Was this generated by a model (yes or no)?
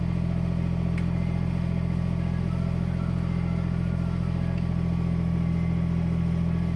no